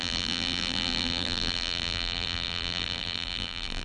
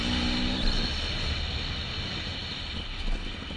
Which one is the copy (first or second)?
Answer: first